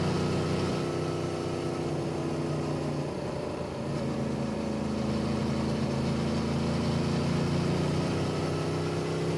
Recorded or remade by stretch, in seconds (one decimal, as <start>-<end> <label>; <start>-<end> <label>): 0.0-9.4 recorded